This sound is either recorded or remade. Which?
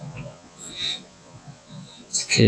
remade